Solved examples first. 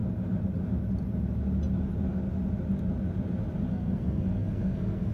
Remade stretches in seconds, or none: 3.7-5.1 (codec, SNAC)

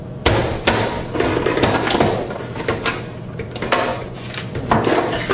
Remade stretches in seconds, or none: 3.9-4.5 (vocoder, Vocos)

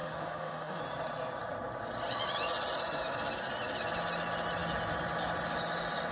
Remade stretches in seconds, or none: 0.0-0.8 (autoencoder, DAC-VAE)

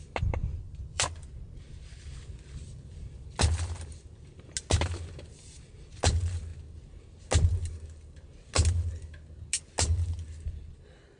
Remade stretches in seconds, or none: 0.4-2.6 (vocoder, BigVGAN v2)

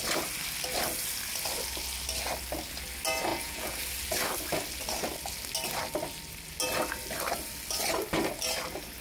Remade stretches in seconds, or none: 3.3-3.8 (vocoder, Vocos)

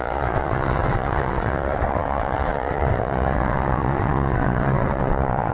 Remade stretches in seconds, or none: 0.0-5.5 (vocoder, WaveNeXt)